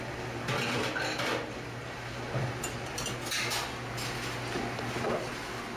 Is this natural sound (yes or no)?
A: yes